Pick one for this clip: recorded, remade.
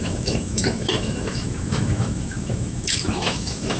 remade